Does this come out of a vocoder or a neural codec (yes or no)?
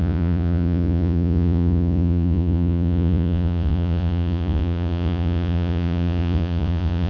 yes